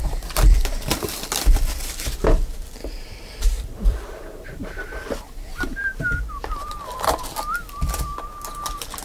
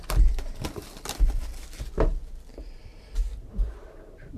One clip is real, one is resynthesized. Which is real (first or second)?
second